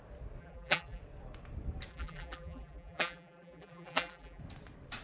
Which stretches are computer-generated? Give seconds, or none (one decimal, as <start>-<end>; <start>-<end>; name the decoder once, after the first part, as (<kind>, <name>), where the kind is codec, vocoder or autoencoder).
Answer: 0.4-1.0 (vocoder, BigVGAN v2); 1.9-4.4

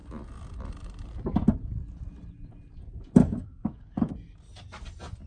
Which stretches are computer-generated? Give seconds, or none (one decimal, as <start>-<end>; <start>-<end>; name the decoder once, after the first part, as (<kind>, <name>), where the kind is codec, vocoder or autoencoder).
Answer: 3.2-4.1 (codec, DAC)

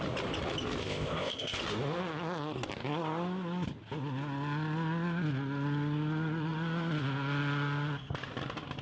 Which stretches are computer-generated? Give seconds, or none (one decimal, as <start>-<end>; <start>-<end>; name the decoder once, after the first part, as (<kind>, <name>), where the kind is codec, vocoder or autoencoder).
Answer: 0.8-1.6 (codec, ZipCodec)

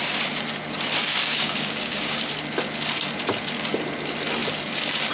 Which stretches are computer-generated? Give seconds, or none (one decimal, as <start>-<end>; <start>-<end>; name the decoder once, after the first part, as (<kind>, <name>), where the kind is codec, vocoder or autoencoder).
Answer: 1.0-2.3 (codec, DAC)